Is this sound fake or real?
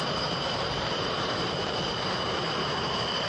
fake